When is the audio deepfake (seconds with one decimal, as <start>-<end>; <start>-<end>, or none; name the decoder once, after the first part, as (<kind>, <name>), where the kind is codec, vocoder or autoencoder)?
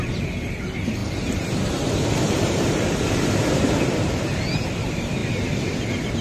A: 1.0-3.7 (vocoder, BigVGAN v2)